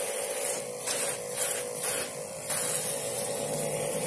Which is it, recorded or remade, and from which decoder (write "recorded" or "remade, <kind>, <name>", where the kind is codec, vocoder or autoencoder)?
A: recorded